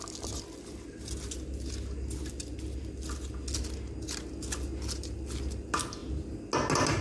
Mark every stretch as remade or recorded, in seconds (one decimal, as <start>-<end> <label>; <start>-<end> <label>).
0.0-7.0 recorded